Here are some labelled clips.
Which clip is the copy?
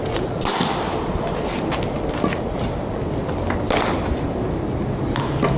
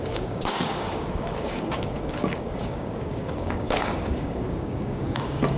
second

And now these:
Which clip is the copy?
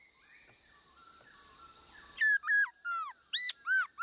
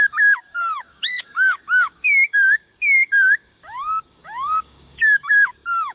second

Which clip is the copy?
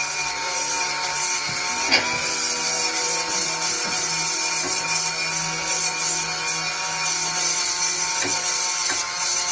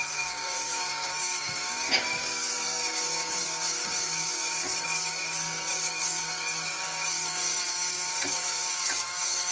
second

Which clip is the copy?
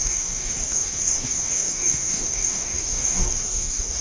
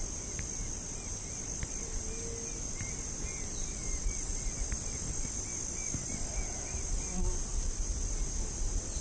first